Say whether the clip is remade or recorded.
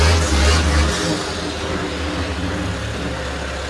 recorded